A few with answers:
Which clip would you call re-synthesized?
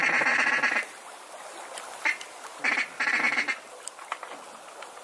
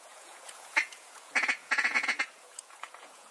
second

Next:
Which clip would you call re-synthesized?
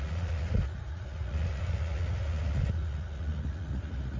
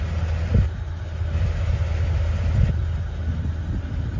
first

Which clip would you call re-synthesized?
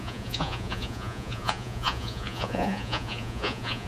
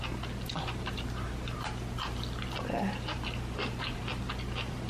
first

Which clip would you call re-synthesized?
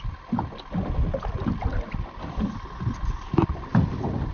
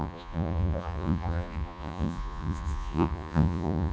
second